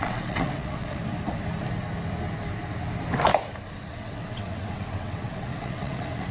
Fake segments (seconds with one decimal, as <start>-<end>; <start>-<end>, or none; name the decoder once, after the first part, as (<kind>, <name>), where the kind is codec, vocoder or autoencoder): 0.0-1.0 (vocoder, WaveNeXt); 3.9-6.3

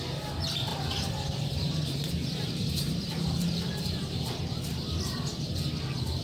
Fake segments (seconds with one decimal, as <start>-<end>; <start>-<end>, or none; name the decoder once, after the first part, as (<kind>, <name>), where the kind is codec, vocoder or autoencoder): 0.7-4.4 (vocoder, BigVGAN v2)

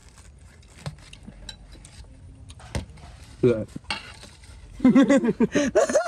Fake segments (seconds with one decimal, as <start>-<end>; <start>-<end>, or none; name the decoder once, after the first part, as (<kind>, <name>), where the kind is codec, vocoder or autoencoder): none